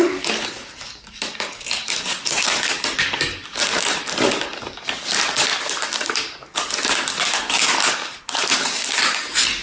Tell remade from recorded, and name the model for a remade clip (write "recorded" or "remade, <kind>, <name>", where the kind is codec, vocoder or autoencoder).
remade, codec, DAC